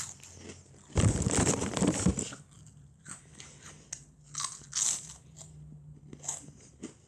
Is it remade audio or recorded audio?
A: recorded